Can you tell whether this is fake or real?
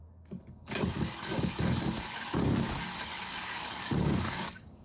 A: fake